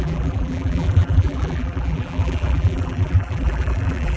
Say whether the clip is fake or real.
fake